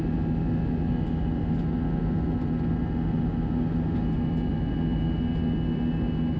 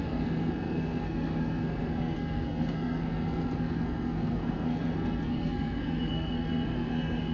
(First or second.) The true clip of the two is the first